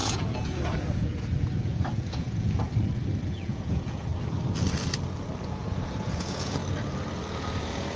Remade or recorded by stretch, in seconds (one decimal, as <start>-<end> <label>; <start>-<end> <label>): 0.0-2.7 remade; 2.7-3.3 recorded; 3.3-4.1 remade; 4.1-5.4 recorded; 5.4-6.6 remade; 6.6-7.3 recorded; 7.3-8.0 remade